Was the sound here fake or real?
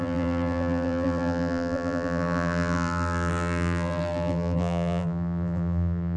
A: fake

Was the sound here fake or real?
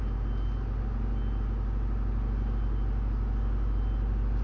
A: real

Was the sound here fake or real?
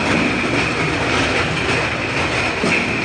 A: real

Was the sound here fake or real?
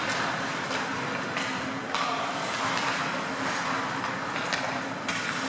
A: real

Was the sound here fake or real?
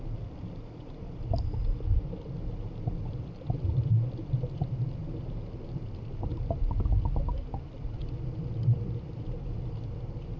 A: real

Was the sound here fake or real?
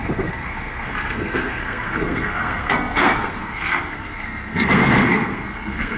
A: fake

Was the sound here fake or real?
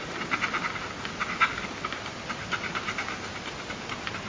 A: real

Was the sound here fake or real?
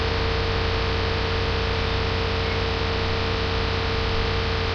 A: real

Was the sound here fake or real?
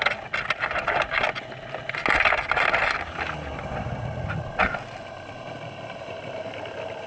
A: real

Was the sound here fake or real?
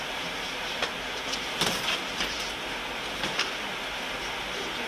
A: real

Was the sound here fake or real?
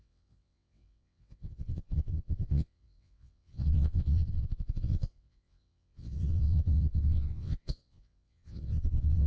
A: fake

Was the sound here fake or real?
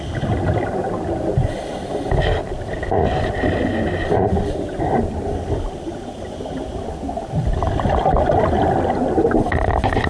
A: real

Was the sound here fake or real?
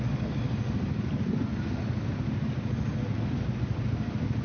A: real